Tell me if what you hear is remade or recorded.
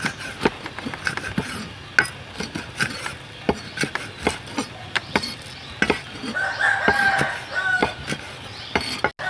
recorded